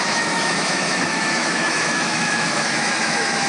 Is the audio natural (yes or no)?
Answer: no